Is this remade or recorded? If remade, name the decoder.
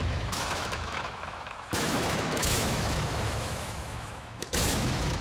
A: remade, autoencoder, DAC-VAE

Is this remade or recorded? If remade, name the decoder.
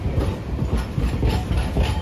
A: recorded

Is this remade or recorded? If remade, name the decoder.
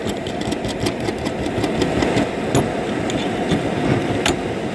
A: recorded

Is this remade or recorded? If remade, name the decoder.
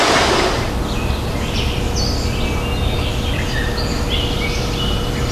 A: recorded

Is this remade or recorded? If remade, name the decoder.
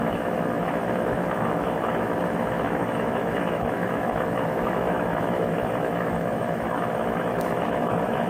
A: remade, autoencoder, DAC-VAE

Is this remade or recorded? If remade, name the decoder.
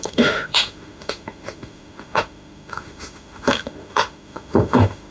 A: remade, autoencoder, DAC-VAE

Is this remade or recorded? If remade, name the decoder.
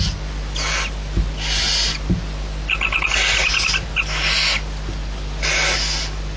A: recorded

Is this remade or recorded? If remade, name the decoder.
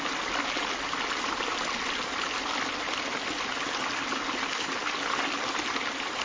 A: recorded